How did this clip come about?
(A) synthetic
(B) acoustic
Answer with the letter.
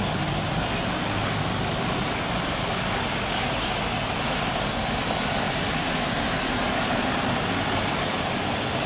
B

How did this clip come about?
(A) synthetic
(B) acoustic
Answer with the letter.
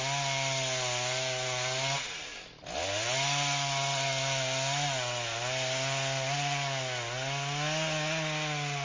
B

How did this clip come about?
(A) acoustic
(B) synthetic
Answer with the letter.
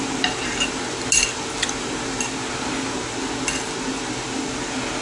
A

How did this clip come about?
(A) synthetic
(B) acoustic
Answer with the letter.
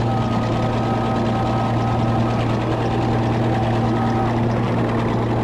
B